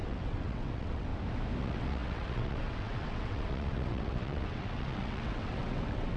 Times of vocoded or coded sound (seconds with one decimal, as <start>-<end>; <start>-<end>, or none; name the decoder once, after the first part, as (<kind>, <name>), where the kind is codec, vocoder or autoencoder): 0.0-1.1 (vocoder, WaveNeXt); 1.6-6.2